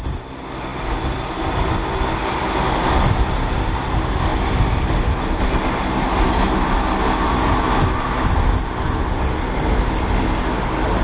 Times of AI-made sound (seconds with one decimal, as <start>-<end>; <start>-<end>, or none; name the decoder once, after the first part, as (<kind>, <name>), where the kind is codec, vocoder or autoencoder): none